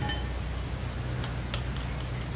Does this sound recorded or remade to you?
recorded